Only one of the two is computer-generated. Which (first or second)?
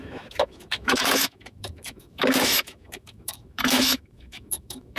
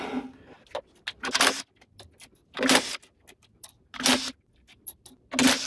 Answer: first